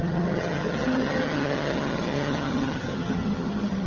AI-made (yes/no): yes